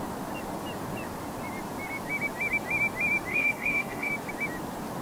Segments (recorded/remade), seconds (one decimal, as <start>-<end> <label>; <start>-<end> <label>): 0.0-3.3 recorded; 3.3-4.1 remade; 4.1-5.0 recorded